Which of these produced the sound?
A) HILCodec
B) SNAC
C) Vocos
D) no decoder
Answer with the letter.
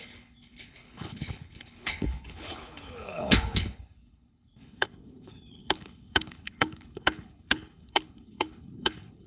A